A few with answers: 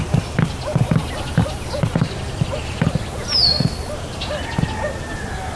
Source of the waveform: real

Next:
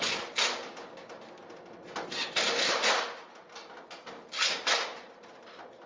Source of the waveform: real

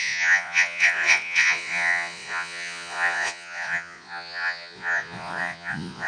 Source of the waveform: fake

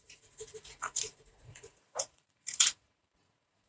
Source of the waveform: fake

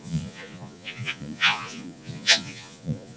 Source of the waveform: fake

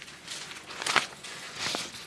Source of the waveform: fake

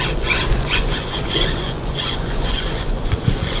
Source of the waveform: fake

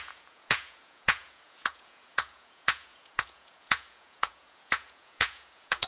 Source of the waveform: fake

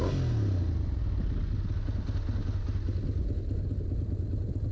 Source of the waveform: real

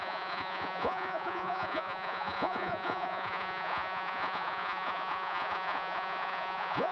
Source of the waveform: fake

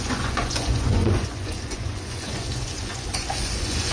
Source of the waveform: fake